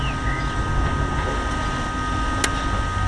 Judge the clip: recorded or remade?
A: recorded